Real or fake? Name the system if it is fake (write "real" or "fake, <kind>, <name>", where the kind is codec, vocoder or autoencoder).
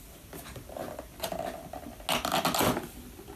real